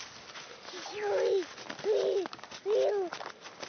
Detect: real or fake real